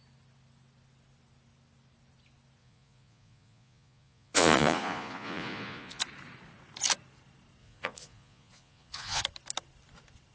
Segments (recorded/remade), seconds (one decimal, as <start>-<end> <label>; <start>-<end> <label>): 0.0-2.6 recorded; 2.6-6.0 remade; 6.0-7.6 recorded; 7.6-9.2 remade; 9.2-10.3 recorded